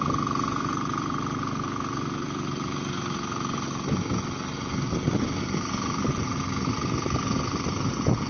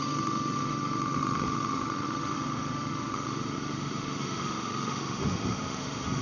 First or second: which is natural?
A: first